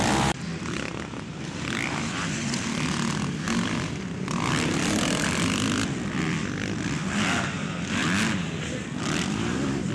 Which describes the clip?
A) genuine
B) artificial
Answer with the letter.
B